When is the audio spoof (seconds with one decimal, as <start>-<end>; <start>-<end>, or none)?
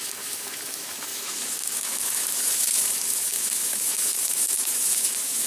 0.0-5.5